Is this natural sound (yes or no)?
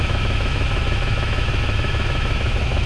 no